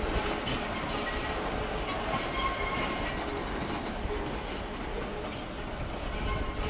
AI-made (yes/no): no